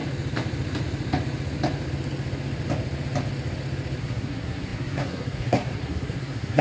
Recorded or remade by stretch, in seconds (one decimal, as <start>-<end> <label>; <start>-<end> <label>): 0.0-4.0 recorded; 4.0-6.6 remade